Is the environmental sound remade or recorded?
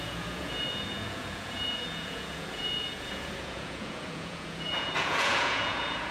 remade